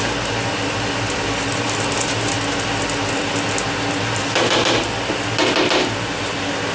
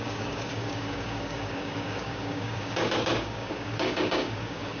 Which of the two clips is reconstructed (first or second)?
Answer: second